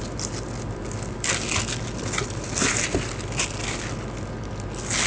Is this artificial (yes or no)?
no